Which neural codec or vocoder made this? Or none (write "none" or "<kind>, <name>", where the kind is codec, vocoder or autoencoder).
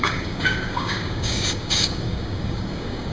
codec, DAC